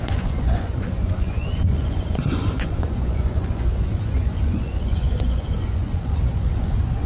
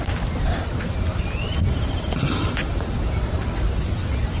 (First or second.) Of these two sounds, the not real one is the first